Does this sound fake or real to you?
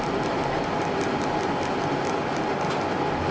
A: real